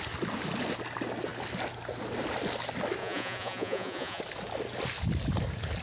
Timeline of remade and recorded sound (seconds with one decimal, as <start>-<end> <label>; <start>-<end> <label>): 0.0-3.0 recorded; 3.0-4.2 remade; 4.2-5.8 recorded